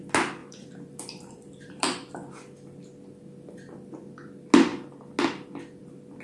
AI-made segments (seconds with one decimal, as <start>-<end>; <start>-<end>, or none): 0.4-2.3

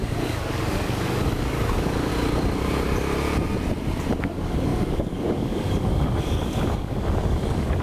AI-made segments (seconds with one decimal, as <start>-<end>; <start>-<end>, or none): 0.0-2.1; 4.2-7.8

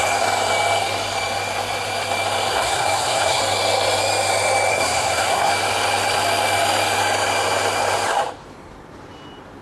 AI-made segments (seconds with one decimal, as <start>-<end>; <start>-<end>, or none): 2.5-3.4; 4.7-5.5

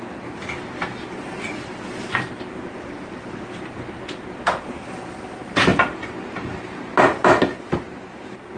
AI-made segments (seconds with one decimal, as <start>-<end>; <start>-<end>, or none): none

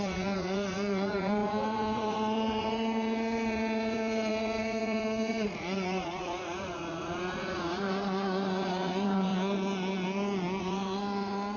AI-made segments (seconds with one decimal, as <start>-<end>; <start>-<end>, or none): 0.0-9.3; 10.6-11.6